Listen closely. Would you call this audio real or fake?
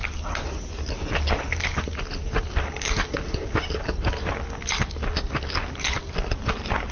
real